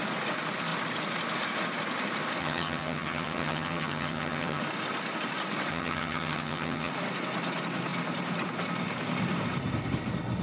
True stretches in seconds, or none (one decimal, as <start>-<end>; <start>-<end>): 0.0-2.4; 4.6-5.7; 6.9-10.4